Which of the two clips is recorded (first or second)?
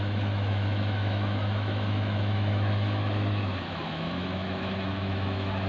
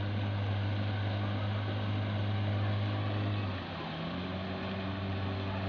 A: second